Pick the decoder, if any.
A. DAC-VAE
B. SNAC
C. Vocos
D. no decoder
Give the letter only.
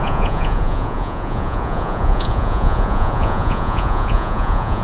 C